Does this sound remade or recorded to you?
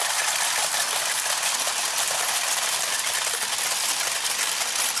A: recorded